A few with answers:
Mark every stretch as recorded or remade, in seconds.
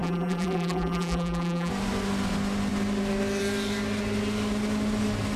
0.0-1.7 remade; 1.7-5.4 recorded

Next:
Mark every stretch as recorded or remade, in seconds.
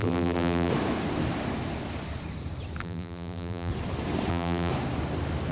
0.0-0.7 remade; 0.7-2.8 recorded; 2.8-3.7 remade; 3.7-4.3 recorded; 4.3-4.7 remade; 4.7-5.5 recorded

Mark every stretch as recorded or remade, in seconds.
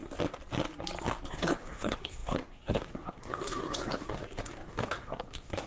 0.0-1.3 recorded; 1.3-5.7 remade